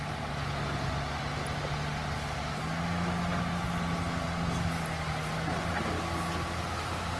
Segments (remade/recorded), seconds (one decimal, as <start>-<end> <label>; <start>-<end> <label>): 0.0-7.2 recorded